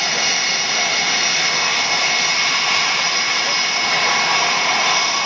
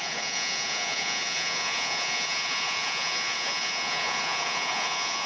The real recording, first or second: first